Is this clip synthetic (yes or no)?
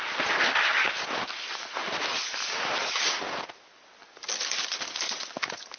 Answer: no